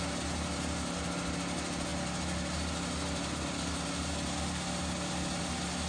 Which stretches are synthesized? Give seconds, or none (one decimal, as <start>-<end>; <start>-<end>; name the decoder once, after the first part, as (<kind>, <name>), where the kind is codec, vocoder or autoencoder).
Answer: none